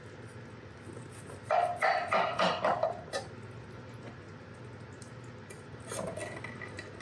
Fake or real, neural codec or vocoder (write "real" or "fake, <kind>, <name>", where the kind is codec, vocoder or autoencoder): real